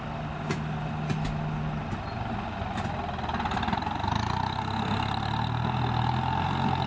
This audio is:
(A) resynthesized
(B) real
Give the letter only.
B